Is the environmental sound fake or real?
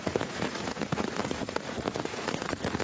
fake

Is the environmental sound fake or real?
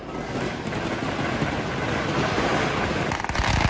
real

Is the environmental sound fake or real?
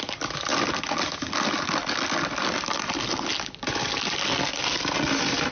real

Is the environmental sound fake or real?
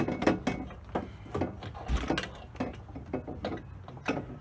real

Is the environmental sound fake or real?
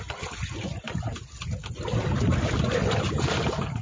real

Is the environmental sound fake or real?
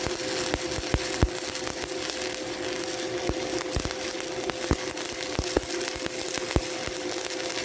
real